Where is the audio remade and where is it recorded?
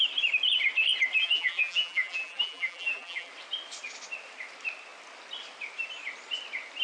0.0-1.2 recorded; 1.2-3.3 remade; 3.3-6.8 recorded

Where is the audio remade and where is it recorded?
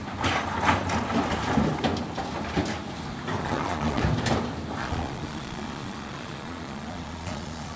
0.0-3.4 recorded; 3.4-4.0 remade; 4.0-4.8 recorded; 4.8-7.8 remade